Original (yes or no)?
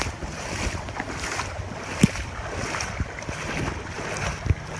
yes